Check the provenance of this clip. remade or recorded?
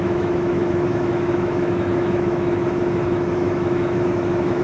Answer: remade